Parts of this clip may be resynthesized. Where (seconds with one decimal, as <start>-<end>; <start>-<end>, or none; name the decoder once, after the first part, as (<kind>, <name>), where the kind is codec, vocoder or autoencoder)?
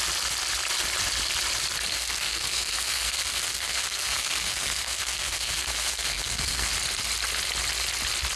1.9-6.7 (codec, SNAC)